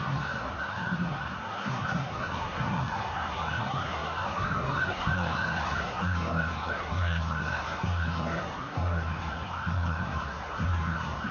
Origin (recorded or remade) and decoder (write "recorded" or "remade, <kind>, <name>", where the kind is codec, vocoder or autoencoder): remade, codec, SNAC